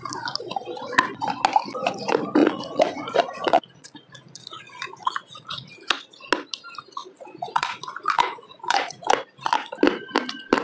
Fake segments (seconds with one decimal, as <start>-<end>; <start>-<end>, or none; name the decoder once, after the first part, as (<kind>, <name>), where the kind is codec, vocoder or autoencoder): 2.4-5.9 (vocoder, Vocos); 7.0-9.1